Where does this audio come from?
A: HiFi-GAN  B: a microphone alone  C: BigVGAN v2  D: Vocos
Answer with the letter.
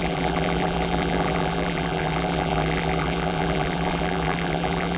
C